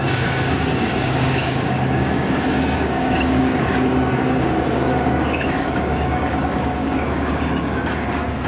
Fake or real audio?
fake